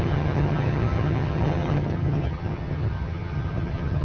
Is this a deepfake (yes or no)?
yes